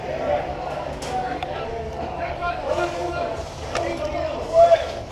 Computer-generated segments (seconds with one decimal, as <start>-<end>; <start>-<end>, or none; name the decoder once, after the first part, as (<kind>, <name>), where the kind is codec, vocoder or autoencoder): 0.5-3.4 (codec, DAC); 4.2-5.1